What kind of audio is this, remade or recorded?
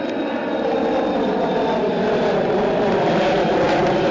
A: recorded